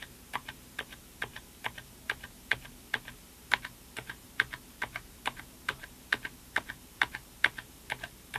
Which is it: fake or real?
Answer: fake